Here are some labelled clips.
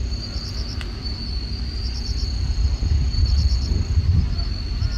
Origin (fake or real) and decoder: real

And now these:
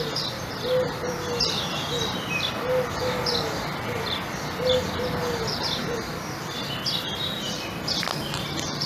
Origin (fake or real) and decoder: fake, vocoder, BigVGAN v2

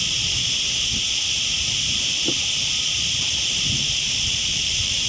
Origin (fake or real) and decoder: fake, vocoder, BigVGAN v2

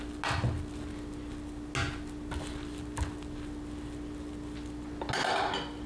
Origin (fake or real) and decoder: real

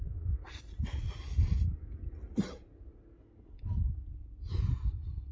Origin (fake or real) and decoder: real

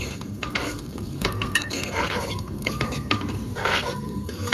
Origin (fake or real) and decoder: fake, codec, SNAC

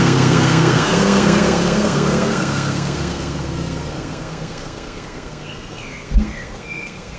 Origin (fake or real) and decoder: fake, codec, SNAC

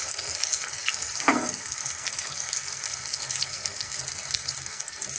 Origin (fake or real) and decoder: fake, codec, SNAC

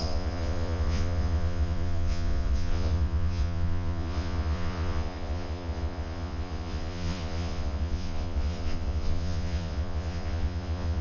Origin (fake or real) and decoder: fake, vocoder, Vocos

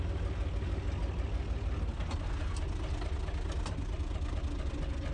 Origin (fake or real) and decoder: real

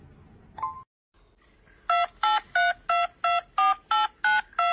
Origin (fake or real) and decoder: real